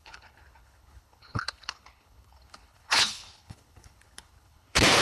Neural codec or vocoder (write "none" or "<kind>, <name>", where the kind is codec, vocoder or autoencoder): codec, HILCodec